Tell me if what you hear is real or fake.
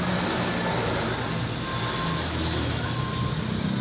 real